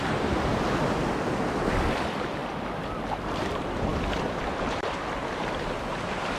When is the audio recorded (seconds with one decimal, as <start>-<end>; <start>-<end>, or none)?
0.5-1.7; 2.4-3.1